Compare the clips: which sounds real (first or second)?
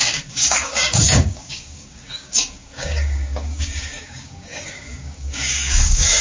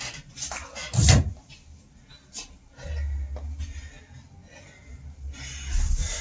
second